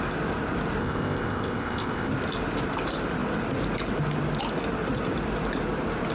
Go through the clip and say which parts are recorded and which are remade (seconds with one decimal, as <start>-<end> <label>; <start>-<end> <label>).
0.0-0.8 recorded; 0.8-2.1 remade; 2.1-6.1 recorded